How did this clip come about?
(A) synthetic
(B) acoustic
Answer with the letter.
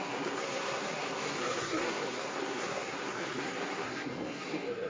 A